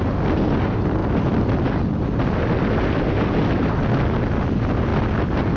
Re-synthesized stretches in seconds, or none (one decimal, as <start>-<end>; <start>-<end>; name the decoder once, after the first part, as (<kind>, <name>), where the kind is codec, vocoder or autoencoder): none